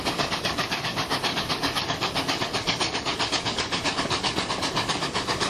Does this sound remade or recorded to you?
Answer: remade